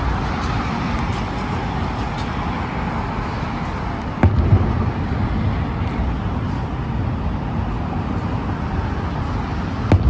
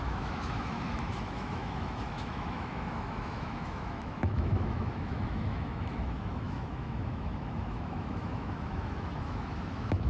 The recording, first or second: first